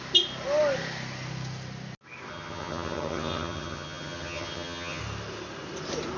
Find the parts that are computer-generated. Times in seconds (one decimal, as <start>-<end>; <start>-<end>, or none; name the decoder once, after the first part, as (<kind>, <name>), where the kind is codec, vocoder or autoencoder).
2.3-5.0 (vocoder, HiFi-GAN)